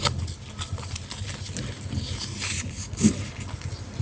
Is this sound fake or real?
real